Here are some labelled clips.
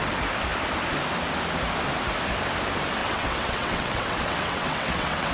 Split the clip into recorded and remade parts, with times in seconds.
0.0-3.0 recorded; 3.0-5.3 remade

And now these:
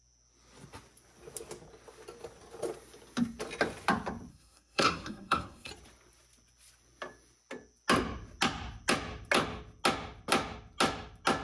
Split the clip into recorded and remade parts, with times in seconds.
0.0-4.3 recorded; 4.3-5.7 remade; 5.7-11.4 recorded

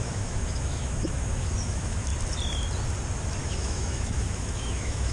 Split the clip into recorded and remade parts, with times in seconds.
0.0-2.1 remade; 2.1-3.4 recorded; 3.4-5.1 remade